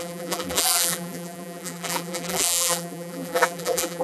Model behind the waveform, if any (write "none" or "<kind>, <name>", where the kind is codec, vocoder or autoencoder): vocoder, BigVGAN v2